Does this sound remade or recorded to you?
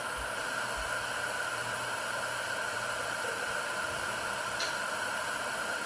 remade